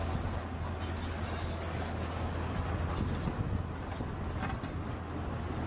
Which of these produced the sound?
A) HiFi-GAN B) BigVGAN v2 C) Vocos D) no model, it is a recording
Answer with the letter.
D